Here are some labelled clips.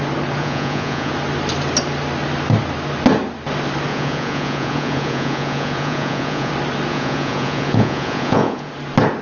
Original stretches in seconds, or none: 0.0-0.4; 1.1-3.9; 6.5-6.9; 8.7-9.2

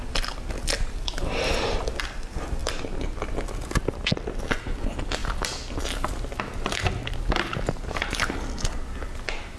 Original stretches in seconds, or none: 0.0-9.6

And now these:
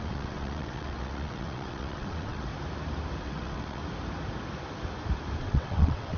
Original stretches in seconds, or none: 2.5-3.2; 3.8-5.4

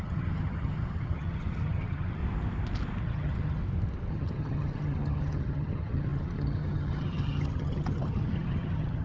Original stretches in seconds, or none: 2.2-3.0; 3.6-4.1